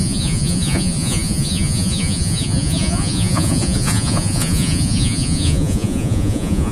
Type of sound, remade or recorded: remade